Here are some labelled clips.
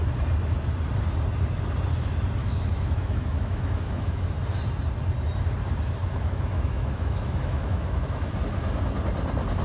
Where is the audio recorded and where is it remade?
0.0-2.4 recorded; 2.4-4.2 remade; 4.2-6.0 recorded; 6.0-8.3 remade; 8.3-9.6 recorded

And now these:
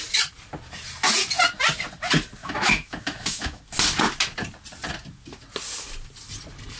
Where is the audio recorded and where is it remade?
0.0-2.4 recorded; 2.4-3.6 remade; 3.6-6.8 recorded

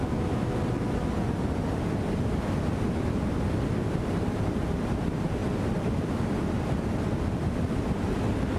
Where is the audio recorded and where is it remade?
0.0-8.6 recorded